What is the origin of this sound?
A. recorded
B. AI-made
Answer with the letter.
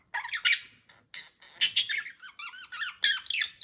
A